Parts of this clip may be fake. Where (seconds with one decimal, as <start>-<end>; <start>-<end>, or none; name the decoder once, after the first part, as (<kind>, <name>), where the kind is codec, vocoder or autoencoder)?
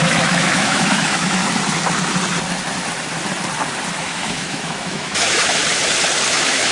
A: 0.0-1.4 (autoencoder, DAC-VAE); 4.0-5.6; 6.3-6.7